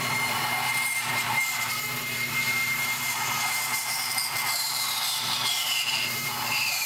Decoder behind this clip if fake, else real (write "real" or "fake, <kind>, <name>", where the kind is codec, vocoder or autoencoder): fake, vocoder, BigVGAN v2